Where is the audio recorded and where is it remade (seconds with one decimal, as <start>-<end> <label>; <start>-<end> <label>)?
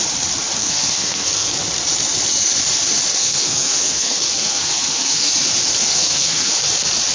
0.0-0.6 recorded; 0.6-1.5 remade; 1.5-3.2 recorded; 3.2-5.3 remade; 5.3-5.8 recorded; 5.8-6.5 remade; 6.5-7.1 recorded